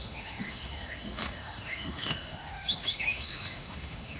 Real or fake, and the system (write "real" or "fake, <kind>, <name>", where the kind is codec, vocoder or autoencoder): fake, autoencoder, DAC-VAE